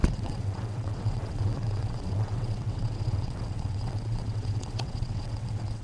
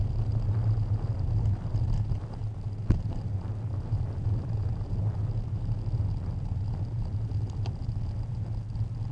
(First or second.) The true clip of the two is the second